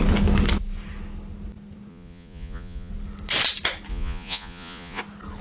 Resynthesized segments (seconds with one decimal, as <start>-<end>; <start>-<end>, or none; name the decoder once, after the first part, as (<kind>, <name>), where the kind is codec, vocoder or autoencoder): 1.9-2.9 (vocoder, Vocos); 3.9-5.0